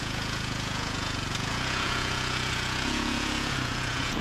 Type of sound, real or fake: fake